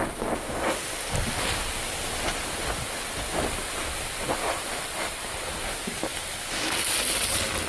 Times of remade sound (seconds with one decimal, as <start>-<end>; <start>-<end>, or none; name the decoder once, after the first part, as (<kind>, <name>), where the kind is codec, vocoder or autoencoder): none